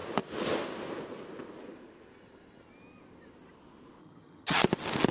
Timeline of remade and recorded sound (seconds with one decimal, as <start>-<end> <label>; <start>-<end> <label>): 0.0-4.0 recorded; 4.0-4.6 remade; 4.6-5.1 recorded